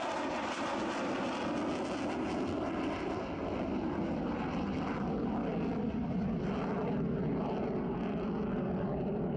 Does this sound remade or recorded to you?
recorded